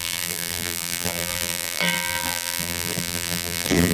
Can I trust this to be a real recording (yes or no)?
no